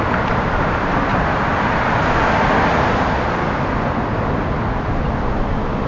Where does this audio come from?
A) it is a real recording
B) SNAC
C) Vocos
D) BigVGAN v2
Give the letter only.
A